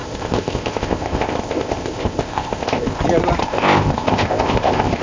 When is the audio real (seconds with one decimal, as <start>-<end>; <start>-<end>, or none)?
3.0-3.4

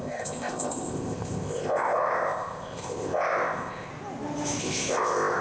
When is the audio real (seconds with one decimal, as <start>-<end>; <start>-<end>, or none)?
3.9-4.6

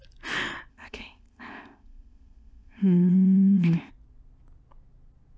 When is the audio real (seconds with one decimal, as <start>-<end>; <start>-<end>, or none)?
0.0-0.7; 3.9-5.4

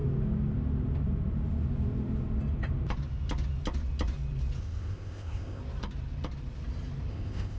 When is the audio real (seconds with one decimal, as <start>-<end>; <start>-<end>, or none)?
0.0-4.6; 5.6-7.1

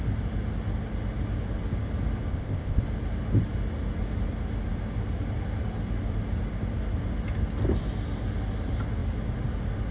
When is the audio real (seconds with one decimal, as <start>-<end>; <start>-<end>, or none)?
0.0-2.3; 2.8-9.9

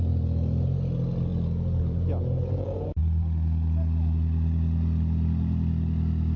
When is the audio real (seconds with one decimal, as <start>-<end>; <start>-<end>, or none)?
0.0-6.4

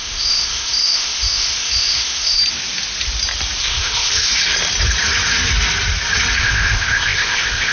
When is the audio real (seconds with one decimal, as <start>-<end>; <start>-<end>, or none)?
2.4-3.6; 4.3-6.4

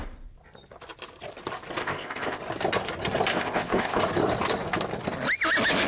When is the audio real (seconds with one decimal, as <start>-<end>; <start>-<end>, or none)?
0.0-1.8; 2.4-3.3; 4.0-5.9